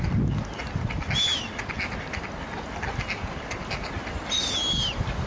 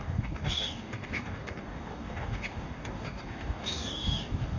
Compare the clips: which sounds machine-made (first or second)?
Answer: second